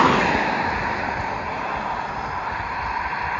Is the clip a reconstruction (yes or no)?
no